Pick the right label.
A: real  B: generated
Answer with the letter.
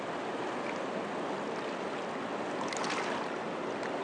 A